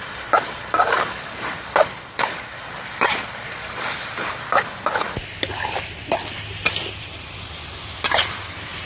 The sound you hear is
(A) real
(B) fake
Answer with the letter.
A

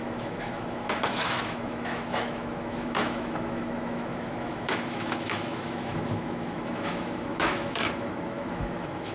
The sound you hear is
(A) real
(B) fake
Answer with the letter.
B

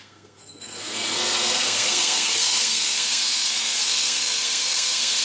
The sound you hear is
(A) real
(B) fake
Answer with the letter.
B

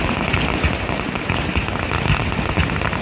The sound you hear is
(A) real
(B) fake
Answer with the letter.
A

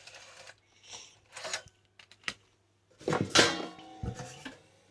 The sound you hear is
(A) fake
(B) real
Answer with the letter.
B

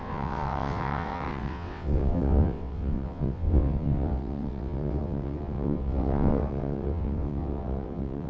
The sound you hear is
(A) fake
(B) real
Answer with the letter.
A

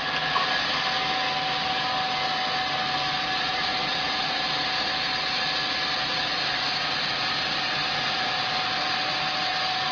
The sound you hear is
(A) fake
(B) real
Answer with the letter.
B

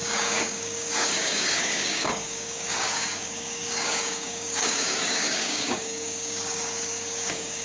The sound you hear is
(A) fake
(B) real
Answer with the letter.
A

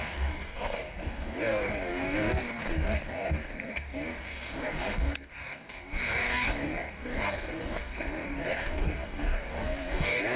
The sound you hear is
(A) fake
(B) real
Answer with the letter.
A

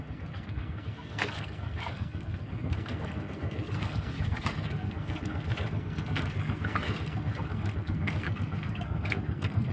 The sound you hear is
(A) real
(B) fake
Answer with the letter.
B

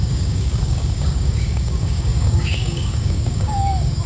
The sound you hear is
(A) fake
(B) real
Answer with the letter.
A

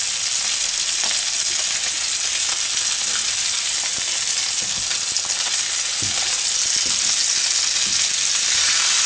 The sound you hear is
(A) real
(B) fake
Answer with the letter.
A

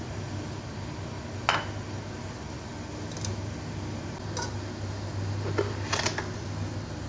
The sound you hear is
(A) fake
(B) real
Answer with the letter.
B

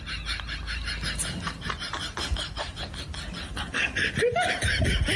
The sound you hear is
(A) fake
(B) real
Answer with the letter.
B